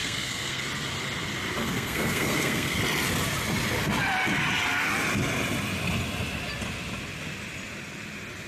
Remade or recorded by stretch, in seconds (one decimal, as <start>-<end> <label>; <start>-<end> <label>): 0.0-0.6 remade; 0.6-1.6 recorded; 1.6-2.8 remade; 2.8-8.5 recorded